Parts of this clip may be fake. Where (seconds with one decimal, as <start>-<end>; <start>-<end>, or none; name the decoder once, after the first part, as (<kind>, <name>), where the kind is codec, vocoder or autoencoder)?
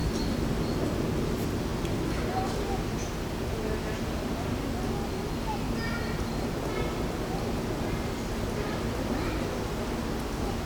0.0-0.5 (vocoder, BigVGAN v2)